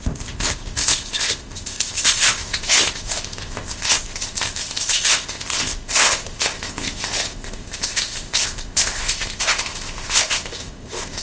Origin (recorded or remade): remade